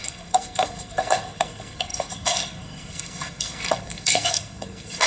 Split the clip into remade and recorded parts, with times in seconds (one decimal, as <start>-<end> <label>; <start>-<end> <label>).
0.0-5.1 remade